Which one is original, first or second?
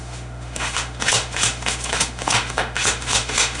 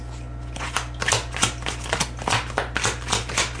second